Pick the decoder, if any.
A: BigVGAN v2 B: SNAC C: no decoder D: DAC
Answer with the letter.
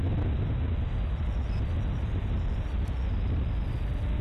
C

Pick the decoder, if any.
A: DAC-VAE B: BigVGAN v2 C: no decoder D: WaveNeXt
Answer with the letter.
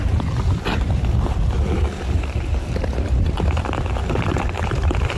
C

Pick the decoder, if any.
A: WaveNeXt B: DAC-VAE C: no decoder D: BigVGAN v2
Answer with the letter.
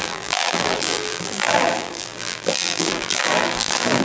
D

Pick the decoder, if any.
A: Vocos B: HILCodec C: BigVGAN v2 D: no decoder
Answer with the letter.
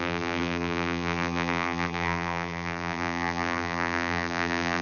C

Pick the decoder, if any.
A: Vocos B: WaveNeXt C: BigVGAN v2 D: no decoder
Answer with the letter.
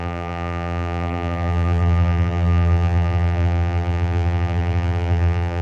C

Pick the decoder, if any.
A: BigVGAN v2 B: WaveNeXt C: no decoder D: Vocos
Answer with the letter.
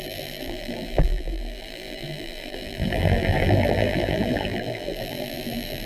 A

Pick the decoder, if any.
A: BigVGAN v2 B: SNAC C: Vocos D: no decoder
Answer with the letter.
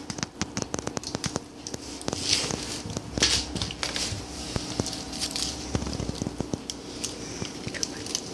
D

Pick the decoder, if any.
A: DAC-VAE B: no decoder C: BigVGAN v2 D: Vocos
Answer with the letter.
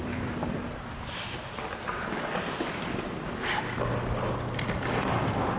C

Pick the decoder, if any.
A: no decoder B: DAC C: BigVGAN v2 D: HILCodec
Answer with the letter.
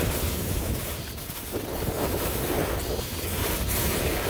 A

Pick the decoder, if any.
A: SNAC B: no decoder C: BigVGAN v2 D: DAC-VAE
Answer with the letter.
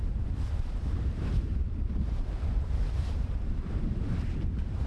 C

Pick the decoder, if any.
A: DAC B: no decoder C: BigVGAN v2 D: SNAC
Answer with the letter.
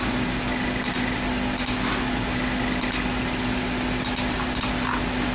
B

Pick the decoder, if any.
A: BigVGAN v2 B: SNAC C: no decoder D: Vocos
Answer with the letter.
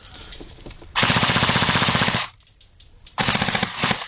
A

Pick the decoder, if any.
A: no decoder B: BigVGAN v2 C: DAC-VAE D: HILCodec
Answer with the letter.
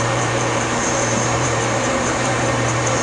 B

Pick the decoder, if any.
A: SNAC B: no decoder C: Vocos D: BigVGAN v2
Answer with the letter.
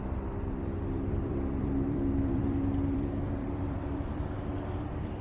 D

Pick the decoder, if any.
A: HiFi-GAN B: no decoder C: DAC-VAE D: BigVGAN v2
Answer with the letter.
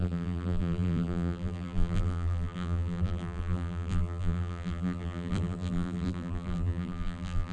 D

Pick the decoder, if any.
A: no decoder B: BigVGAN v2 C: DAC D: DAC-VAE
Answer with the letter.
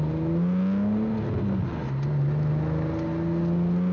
A